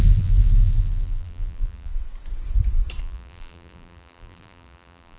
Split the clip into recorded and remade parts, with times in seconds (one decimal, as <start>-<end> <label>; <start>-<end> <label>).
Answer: 0.0-1.9 remade; 1.9-3.0 recorded; 3.0-5.2 remade